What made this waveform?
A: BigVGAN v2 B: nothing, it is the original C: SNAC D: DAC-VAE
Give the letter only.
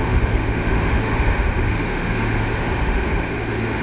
D